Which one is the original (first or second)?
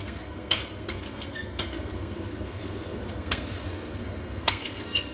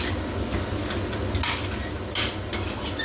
second